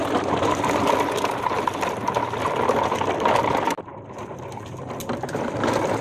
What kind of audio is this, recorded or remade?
recorded